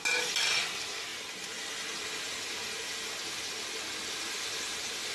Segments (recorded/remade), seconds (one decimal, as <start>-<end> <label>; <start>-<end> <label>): 0.0-5.1 recorded